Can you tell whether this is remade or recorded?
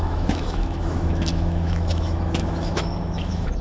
remade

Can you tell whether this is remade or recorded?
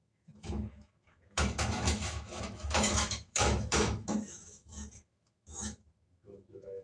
remade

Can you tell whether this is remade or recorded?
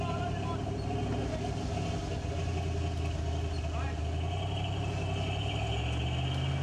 recorded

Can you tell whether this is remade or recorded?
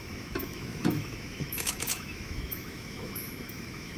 remade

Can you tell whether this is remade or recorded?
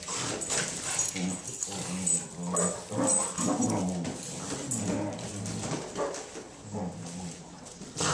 recorded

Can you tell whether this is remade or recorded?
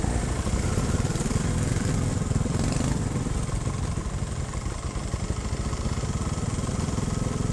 recorded